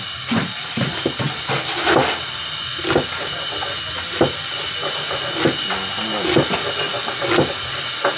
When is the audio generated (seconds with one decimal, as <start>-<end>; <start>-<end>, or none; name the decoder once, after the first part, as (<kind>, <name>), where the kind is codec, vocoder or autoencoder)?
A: none